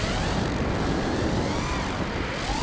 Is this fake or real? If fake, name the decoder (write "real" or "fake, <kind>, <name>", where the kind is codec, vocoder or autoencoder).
real